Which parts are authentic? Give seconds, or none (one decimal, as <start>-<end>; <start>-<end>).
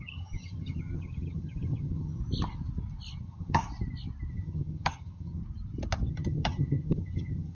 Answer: 2.2-3.2; 3.6-4.3; 5.4-6.1